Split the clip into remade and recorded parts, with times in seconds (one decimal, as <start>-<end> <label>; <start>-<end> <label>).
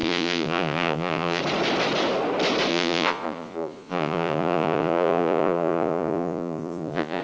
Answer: 0.0-1.4 remade; 1.4-2.7 recorded; 2.7-7.2 remade